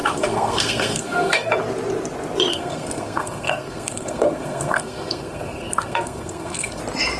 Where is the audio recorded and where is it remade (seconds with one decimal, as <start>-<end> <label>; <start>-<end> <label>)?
0.0-1.5 remade; 1.5-2.5 recorded; 2.5-6.8 remade; 6.8-7.2 recorded